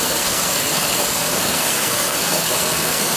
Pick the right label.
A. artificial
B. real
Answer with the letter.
A